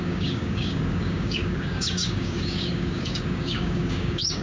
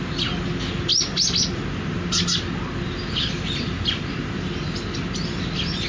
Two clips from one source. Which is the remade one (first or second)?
first